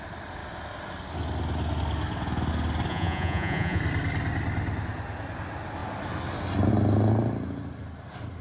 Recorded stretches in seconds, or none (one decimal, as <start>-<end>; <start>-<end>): 0.0-2.9; 3.8-8.4